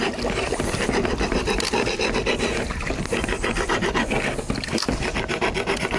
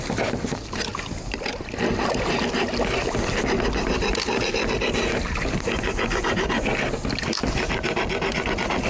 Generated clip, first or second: first